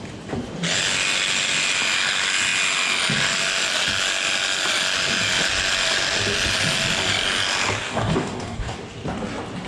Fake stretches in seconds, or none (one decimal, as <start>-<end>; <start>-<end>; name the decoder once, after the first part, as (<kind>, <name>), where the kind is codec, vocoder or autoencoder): 7.8-8.8 (codec, DAC)